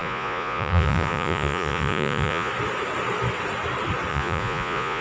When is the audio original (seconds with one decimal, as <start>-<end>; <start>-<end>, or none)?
2.5-4.1